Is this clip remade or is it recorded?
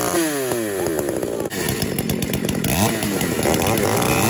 recorded